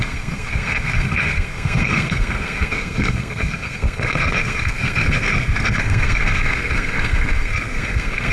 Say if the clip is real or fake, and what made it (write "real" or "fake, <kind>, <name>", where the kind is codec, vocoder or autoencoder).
fake, codec, SNAC